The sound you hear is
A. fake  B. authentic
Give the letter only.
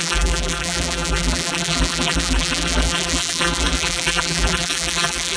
A